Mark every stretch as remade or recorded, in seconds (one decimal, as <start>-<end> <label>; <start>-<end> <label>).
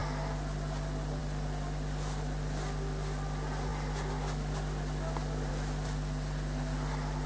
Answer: 0.0-7.3 recorded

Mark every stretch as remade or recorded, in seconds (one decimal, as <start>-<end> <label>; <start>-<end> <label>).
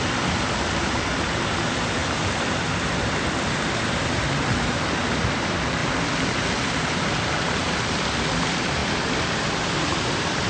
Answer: 0.0-5.8 remade; 5.8-6.5 recorded; 6.5-10.5 remade